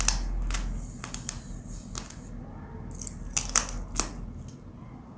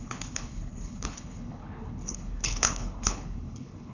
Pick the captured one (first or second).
first